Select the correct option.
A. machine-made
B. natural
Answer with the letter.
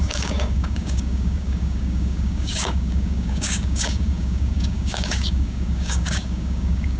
A